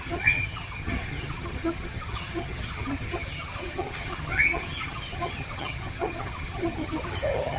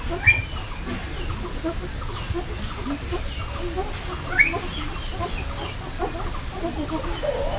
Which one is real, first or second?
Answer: second